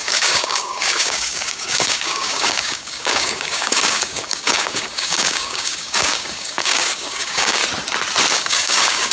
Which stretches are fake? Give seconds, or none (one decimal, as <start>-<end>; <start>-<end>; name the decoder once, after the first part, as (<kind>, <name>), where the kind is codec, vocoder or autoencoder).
0.0-7.6 (codec, DAC); 8.3-9.1